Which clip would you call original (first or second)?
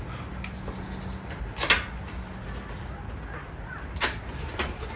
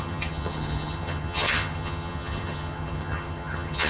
first